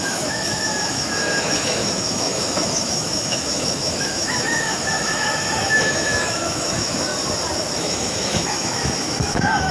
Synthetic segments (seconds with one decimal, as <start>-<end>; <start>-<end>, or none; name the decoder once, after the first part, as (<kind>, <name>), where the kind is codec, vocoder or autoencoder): 0.0-7.1 (autoencoder, DAC-VAE); 7.8-9.7

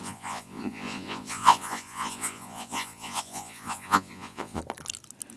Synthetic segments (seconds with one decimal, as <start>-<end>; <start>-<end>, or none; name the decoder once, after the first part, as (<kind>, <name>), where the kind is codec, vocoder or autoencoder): 0.0-4.6 (vocoder, Vocos)

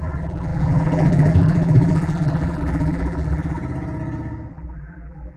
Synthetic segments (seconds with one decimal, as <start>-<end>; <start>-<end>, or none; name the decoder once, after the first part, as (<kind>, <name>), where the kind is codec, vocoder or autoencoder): 0.0-3.6 (vocoder, BigVGAN v2); 4.5-5.4